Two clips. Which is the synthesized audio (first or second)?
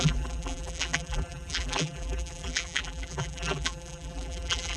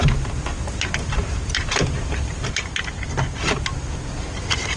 first